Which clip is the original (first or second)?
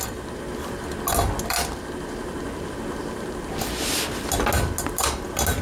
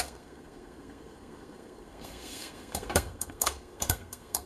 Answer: first